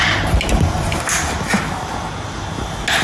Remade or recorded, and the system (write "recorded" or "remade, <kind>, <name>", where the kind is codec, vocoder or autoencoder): recorded